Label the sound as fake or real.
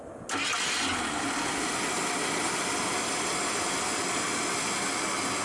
real